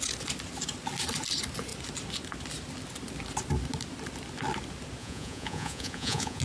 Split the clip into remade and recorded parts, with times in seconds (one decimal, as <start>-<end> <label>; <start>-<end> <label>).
0.0-5.0 recorded; 5.0-6.4 remade